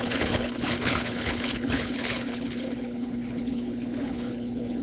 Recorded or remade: remade